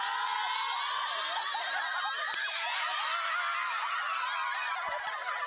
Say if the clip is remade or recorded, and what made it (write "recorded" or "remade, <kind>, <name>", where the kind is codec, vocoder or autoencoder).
recorded